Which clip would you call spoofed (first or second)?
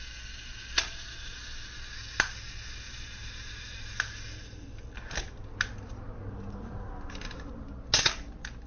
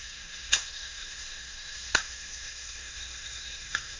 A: second